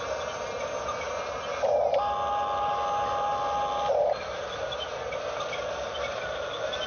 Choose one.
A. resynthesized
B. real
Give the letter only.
B